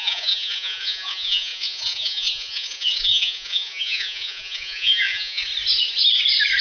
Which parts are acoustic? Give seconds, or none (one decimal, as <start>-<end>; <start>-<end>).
5.5-6.6